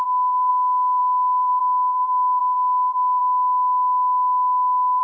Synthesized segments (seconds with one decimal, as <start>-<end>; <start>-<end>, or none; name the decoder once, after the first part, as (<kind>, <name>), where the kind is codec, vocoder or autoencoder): 0.0-0.5 (codec, SNAC); 1.0-3.2